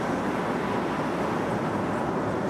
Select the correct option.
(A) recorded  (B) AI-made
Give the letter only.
A